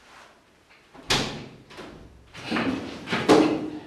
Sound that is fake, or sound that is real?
real